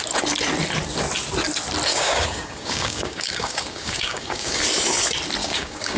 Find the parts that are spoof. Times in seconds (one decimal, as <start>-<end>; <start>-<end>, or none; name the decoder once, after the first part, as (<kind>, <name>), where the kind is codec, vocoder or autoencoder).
1.9-4.6 (codec, DAC); 5.4-6.0